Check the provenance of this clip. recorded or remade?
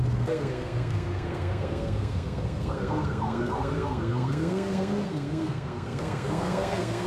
remade